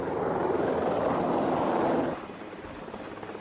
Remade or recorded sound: recorded